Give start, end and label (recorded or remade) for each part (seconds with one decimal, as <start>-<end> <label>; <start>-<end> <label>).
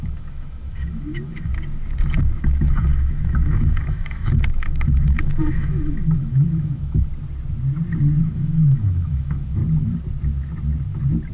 0.0-1.5 remade; 1.5-2.2 recorded; 2.2-7.1 remade; 7.1-8.2 recorded; 8.2-9.6 remade; 9.6-11.3 recorded